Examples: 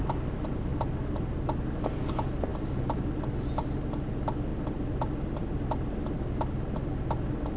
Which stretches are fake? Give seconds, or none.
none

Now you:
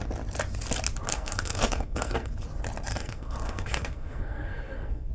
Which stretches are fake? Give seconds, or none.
1.1-2.3 (codec, SNAC); 2.9-5.1

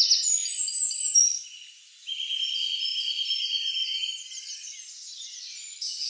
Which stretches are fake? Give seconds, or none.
none

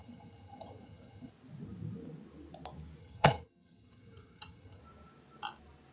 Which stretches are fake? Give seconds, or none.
0.0-1.3 (vocoder, HiFi-GAN); 3.0-4.8